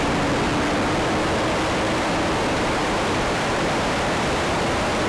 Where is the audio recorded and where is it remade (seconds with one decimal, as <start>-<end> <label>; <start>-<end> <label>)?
0.0-0.5 remade; 0.5-2.0 recorded; 2.0-5.1 remade